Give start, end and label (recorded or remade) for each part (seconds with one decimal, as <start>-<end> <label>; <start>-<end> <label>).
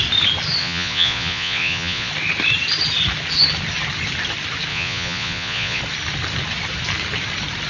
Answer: 0.0-0.6 recorded; 0.6-2.1 remade; 2.1-4.7 recorded; 4.7-5.8 remade; 5.8-7.7 recorded